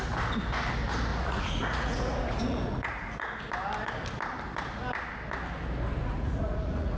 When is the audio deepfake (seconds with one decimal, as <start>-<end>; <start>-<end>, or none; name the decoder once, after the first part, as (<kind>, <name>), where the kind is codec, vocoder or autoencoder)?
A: 1.1-3.4 (vocoder, Vocos); 6.0-7.0